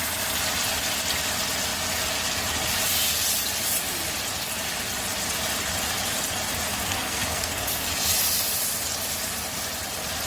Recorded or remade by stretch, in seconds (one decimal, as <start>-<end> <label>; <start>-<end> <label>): 0.0-6.7 recorded; 6.7-7.9 remade; 7.9-10.3 recorded